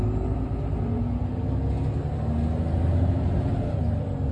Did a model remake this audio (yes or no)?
no